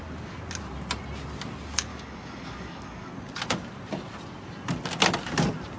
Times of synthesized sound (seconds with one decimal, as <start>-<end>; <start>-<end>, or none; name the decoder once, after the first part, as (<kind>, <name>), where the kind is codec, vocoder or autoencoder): 1.9-3.1 (codec, DAC)